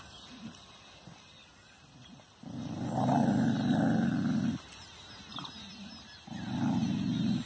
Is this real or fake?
real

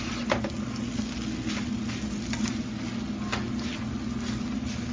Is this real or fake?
real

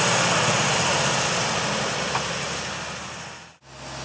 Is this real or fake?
real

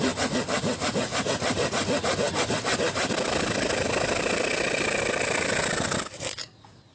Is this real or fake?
real